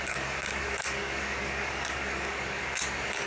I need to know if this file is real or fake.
fake